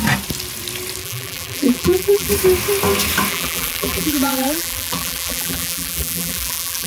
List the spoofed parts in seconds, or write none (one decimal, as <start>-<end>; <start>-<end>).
1.0-2.3; 3.3-6.9